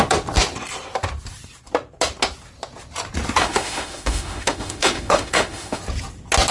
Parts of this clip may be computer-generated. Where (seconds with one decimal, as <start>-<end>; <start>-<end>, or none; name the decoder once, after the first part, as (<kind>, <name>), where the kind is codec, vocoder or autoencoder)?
3.4-5.8 (autoencoder, DAC-VAE)